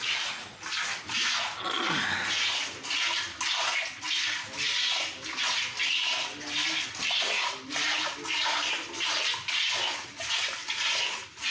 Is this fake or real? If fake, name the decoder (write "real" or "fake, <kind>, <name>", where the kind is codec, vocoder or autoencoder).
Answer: real